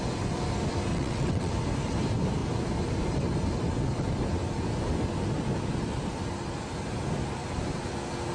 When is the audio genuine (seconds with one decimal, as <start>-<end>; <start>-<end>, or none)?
0.0-0.9; 1.5-8.3